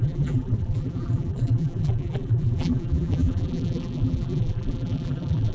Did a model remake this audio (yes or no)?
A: yes